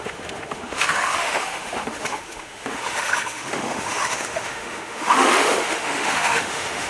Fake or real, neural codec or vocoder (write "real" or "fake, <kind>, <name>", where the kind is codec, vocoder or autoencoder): fake, autoencoder, DAC-VAE